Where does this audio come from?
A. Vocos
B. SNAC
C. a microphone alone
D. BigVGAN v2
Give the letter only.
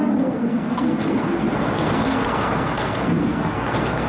B